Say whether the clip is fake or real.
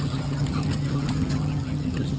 fake